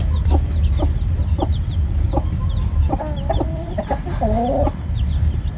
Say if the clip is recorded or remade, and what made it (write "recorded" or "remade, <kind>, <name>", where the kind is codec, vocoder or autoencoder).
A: recorded